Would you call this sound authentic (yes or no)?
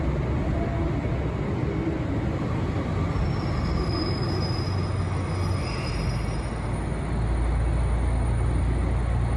yes